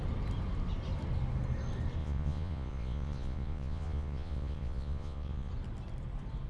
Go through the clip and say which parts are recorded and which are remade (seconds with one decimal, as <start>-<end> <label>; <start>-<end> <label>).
0.0-2.0 recorded; 2.0-5.5 remade; 5.5-6.5 recorded